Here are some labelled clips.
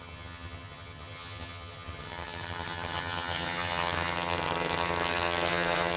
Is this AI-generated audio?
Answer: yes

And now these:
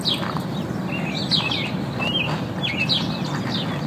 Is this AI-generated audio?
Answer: no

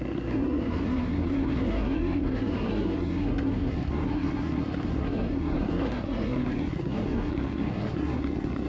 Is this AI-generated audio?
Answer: yes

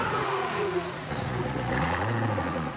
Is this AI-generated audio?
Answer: yes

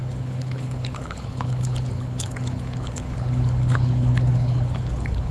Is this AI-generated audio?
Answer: yes